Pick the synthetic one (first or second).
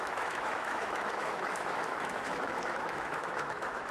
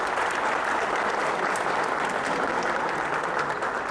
first